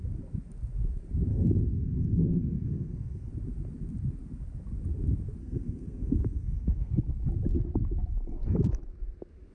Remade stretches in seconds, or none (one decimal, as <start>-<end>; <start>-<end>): 1.3-3.3; 5.4-6.9